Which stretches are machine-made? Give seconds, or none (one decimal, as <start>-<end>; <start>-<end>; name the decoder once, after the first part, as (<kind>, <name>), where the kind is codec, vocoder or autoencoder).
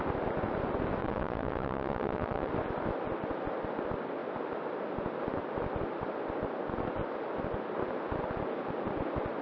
1.0-2.5 (vocoder, WaveNeXt)